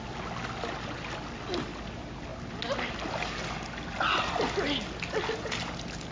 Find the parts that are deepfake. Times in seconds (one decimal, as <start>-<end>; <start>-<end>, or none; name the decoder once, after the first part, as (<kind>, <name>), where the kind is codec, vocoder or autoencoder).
none